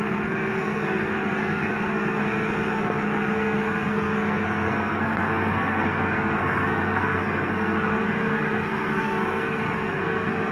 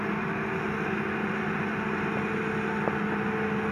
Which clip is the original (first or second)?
second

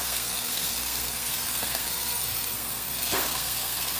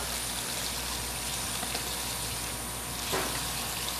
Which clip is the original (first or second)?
second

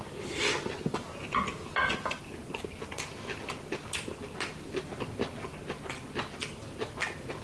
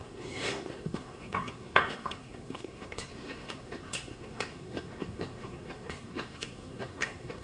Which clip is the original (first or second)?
first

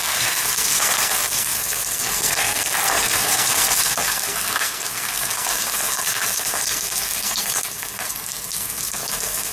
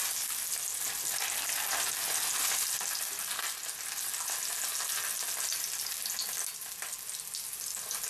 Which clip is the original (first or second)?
second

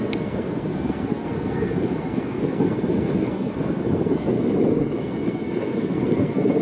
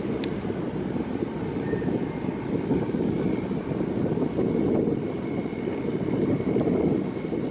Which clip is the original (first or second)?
second